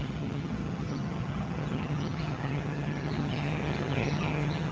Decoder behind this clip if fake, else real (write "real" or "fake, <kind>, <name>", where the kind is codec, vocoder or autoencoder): fake, vocoder, HiFi-GAN